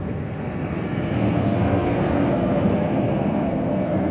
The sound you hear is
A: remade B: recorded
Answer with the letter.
A